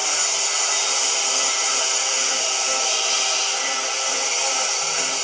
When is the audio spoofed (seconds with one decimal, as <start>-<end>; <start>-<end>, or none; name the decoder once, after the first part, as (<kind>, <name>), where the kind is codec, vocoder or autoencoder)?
1.7-3.4 (vocoder, BigVGAN v2)